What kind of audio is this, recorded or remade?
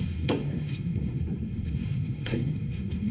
remade